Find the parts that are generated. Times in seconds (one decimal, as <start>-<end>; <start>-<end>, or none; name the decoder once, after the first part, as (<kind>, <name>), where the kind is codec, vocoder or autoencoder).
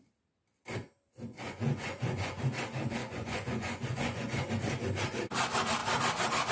1.3-2.4 (vocoder, Vocos); 3.0-4.5